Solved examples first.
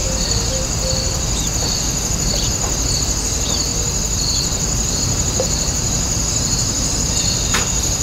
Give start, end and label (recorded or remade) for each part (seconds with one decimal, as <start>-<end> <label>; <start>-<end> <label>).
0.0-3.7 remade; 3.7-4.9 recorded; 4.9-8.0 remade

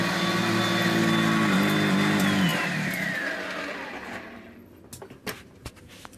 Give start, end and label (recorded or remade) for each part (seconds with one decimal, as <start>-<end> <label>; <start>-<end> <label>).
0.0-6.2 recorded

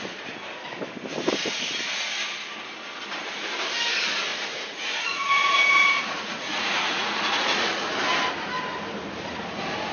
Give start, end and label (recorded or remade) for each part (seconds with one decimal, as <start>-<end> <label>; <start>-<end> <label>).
0.0-4.3 recorded; 4.3-7.9 remade; 7.9-9.9 recorded

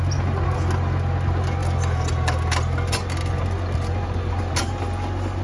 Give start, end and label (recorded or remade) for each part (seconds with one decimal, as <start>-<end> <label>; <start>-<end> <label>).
0.0-5.4 recorded

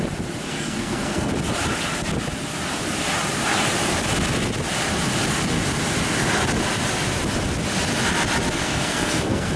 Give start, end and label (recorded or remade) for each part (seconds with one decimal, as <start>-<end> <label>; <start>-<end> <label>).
0.0-0.5 recorded; 0.5-1.3 remade; 1.3-8.6 recorded; 8.6-9.6 remade

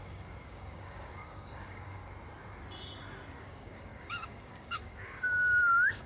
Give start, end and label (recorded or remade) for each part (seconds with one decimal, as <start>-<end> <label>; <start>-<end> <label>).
0.0-2.0 remade; 2.0-3.4 recorded; 3.4-6.1 remade

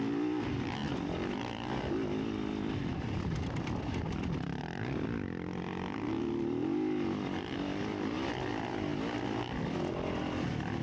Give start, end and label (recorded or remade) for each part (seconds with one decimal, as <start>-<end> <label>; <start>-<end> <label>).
0.0-0.8 recorded; 0.8-6.1 remade; 6.1-10.8 recorded